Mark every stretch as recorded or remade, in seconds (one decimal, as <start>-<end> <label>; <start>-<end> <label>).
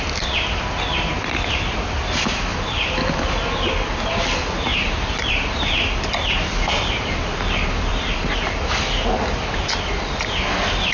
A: 0.0-2.5 recorded; 2.5-4.1 remade; 4.1-4.7 recorded; 4.7-8.3 remade; 8.3-10.9 recorded